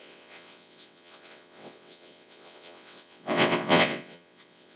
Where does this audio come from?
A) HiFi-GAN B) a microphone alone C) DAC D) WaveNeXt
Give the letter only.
D